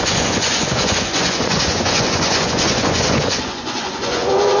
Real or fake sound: fake